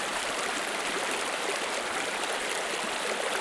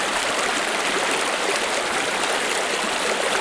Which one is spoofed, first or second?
first